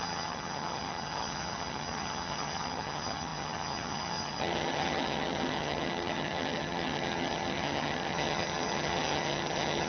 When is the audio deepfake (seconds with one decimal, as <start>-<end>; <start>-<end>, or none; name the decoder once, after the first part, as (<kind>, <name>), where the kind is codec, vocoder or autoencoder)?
0.0-9.9 (vocoder, HiFi-GAN)